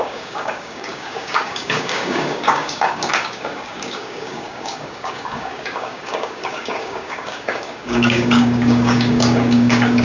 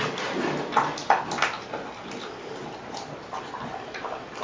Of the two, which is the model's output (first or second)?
first